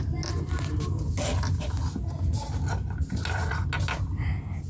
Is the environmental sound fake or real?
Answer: real